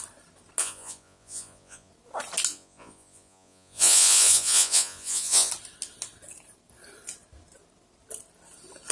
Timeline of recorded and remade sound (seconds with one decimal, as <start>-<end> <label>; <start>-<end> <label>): 0.0-0.6 recorded; 0.6-1.9 remade; 1.9-2.5 recorded; 2.5-5.5 remade; 5.5-8.9 recorded